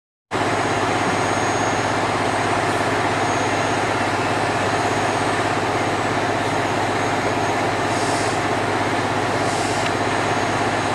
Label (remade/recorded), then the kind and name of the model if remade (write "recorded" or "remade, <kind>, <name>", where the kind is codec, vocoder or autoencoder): recorded